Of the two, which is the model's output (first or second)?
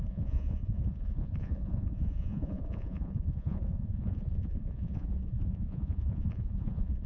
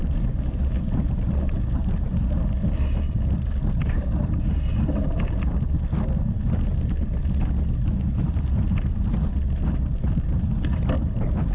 first